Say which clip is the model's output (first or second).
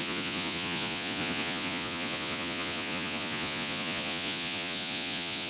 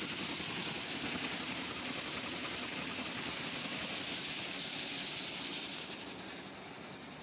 first